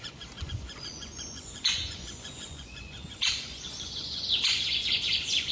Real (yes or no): no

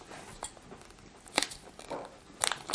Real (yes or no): yes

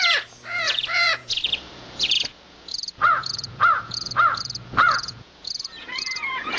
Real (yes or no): no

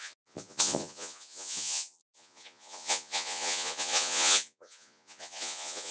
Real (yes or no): no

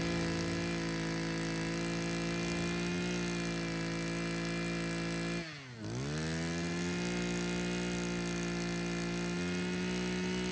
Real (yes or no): yes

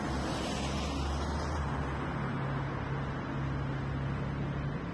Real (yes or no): yes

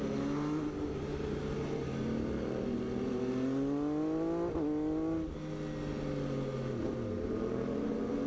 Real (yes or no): yes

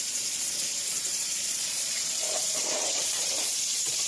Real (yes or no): no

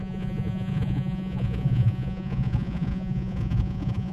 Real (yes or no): no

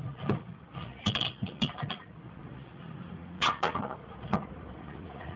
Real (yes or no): no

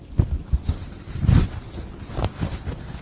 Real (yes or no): yes